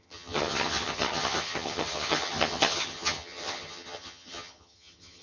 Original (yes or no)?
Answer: no